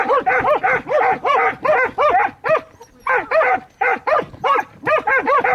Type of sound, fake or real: real